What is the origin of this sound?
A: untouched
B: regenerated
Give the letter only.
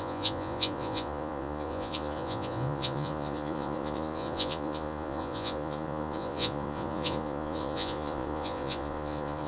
B